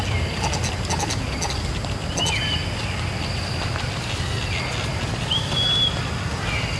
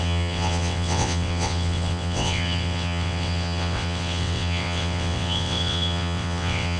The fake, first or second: second